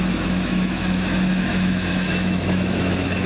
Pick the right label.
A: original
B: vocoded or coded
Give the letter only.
B